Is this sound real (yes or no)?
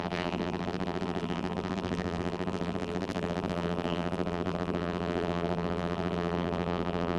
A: no